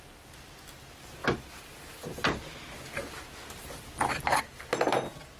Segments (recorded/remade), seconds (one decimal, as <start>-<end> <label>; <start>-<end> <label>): 0.0-5.4 recorded